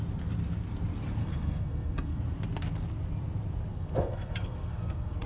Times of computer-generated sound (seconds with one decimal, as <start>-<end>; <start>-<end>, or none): 1.2-2.2; 3.7-5.3